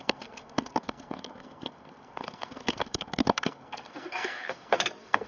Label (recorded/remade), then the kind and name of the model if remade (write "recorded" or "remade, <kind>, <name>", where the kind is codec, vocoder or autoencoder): remade, codec, SNAC